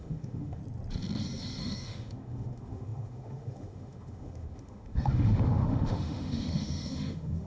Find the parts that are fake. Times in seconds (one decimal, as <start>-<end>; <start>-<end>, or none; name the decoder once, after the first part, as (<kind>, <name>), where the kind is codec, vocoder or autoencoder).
0.0-0.6 (autoencoder, DAC-VAE); 1.6-7.5